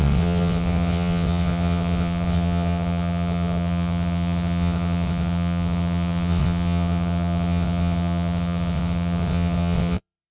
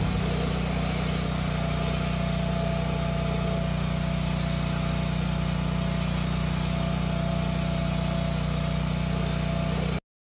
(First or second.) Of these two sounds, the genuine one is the second